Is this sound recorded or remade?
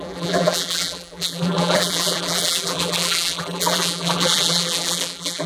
remade